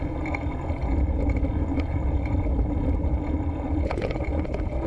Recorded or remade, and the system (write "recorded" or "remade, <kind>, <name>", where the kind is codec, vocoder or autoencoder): remade, vocoder, Vocos